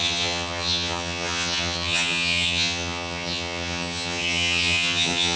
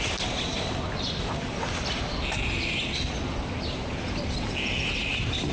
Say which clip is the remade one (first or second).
first